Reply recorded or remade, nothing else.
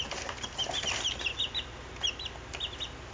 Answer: recorded